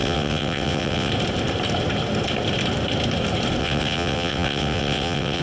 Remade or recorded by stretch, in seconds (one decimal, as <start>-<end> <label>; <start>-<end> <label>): 0.0-1.1 remade; 1.1-3.6 recorded; 3.6-5.4 remade